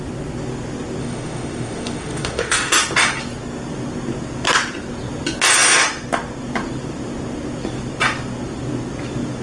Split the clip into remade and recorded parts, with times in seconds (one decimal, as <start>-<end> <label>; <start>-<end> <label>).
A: 0.0-1.0 recorded; 1.0-2.8 remade; 2.8-9.4 recorded